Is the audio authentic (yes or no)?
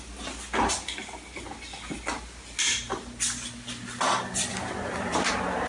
yes